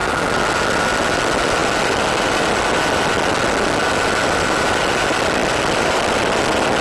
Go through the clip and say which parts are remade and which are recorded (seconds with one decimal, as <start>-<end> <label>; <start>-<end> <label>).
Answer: 0.0-6.8 recorded